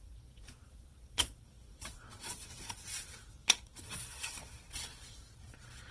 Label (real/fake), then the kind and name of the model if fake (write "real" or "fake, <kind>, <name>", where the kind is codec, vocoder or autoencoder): fake, vocoder, Vocos